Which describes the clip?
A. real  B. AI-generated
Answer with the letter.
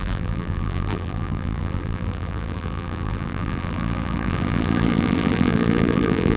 B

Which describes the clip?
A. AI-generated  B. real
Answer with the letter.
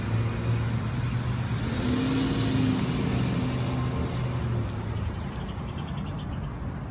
B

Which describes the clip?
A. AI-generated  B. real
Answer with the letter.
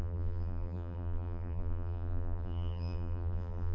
A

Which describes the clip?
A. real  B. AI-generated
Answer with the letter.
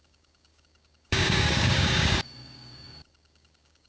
B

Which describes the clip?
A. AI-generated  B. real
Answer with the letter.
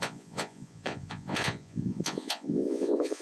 A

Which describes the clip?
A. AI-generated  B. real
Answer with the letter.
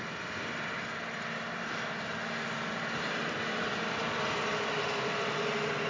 B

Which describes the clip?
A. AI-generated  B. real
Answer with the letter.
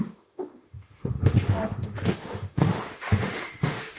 A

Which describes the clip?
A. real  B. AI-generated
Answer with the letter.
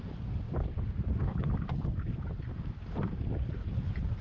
B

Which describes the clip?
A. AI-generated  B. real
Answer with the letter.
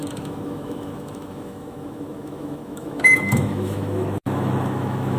A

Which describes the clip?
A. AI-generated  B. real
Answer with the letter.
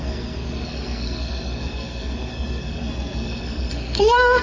A